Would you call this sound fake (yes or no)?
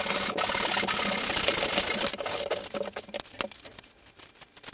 no